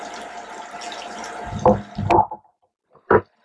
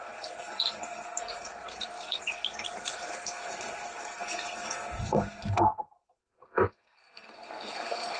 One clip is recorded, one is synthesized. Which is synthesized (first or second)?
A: second